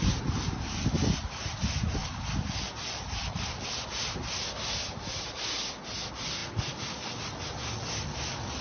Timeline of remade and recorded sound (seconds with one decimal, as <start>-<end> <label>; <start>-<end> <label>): 0.0-2.0 recorded; 2.0-3.5 remade; 3.5-8.6 recorded